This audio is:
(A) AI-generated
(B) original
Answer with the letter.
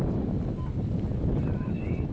B